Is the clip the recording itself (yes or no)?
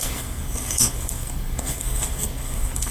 no